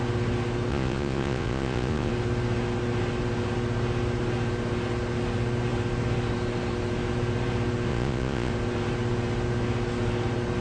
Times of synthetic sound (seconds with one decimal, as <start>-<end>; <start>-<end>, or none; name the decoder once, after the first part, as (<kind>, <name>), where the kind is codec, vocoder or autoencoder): 0.7-2.1 (vocoder, Vocos); 7.9-8.5